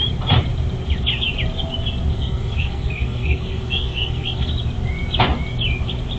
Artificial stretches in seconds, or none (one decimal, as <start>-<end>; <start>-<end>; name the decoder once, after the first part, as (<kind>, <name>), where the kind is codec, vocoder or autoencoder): 2.1-4.5 (codec, SNAC)